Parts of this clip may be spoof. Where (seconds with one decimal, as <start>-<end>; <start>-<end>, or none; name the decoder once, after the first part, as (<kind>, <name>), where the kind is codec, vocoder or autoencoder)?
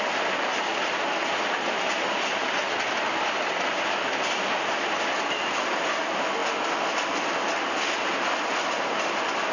none